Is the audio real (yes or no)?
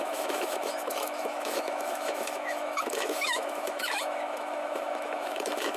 no